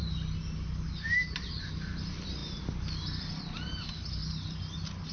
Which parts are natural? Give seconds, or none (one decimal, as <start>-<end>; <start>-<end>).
0.0-5.1